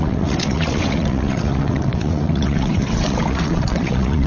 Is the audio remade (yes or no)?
yes